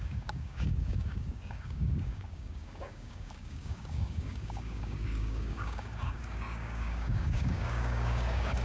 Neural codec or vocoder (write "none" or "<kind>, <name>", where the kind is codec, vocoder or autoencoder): codec, DAC